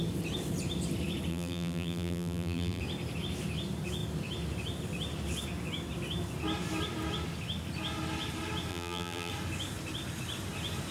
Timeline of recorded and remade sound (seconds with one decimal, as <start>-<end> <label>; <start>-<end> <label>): 0.0-1.3 recorded; 1.3-2.8 remade; 2.8-8.7 recorded; 8.7-9.3 remade; 9.3-10.9 recorded